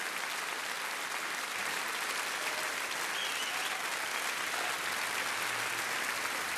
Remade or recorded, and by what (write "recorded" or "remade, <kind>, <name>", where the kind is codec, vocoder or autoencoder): recorded